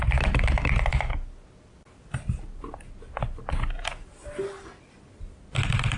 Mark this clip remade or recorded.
recorded